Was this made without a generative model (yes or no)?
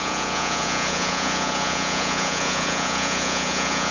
no